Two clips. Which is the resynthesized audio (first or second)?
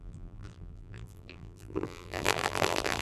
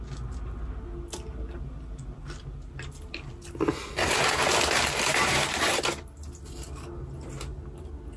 first